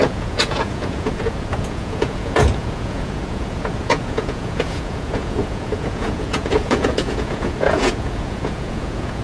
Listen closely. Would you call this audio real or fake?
fake